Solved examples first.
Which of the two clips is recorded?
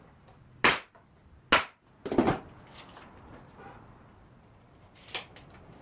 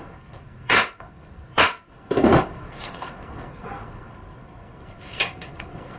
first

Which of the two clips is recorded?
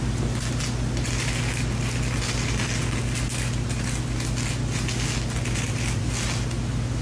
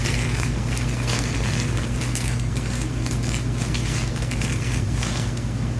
first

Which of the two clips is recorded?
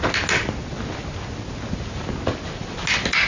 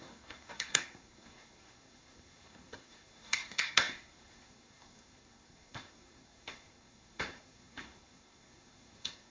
first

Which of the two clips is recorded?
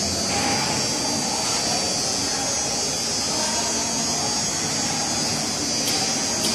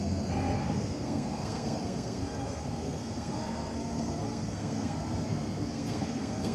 first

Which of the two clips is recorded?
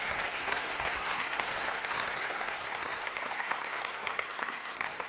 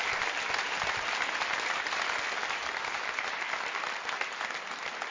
second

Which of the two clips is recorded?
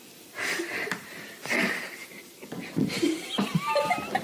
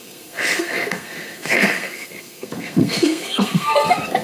first